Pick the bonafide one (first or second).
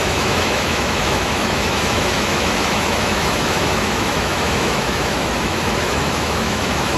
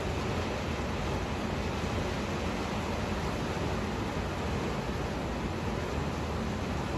second